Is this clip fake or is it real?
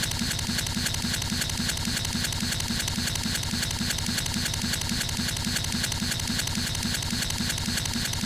fake